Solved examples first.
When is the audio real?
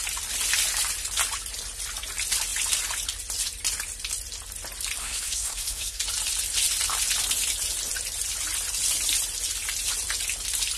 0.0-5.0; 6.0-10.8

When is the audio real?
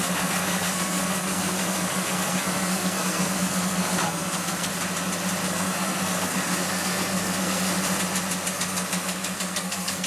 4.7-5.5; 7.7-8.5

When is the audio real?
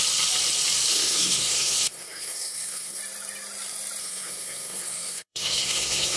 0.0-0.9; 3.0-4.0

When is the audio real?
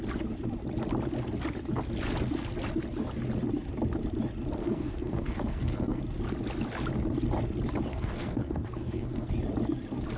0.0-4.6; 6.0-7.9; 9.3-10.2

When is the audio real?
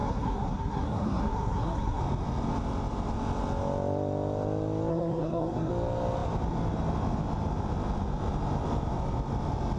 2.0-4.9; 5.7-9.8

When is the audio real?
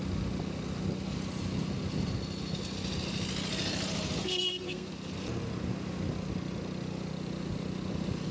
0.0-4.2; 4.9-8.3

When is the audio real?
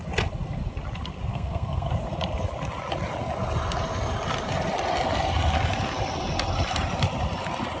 0.0-1.3; 1.9-7.8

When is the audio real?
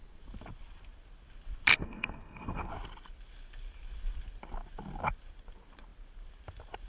0.0-1.7; 2.7-6.9